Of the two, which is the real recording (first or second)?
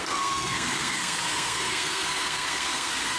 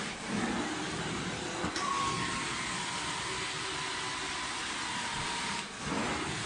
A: second